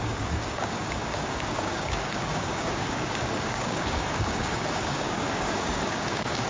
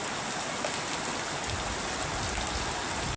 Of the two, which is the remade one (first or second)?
first